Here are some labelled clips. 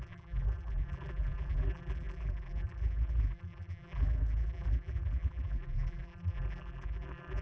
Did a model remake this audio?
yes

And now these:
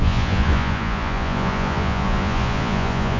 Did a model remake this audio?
yes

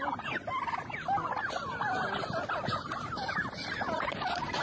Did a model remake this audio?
yes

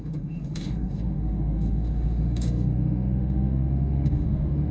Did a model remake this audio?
yes